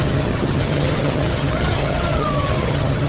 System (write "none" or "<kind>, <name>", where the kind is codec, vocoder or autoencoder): vocoder, HiFi-GAN